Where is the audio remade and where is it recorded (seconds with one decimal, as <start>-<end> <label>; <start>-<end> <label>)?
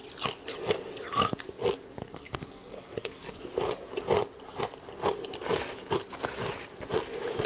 0.0-2.0 recorded; 2.0-3.4 remade; 3.4-7.5 recorded